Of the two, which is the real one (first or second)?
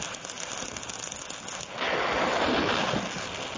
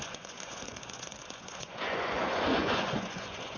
first